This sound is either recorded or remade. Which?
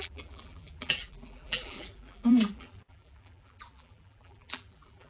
remade